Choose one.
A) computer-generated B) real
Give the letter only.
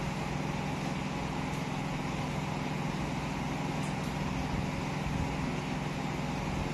B